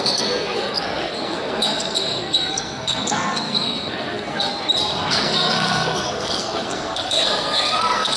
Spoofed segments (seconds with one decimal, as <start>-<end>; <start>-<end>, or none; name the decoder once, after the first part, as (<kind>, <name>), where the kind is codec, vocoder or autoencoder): 0.0-4.5 (codec, SNAC); 5.1-8.2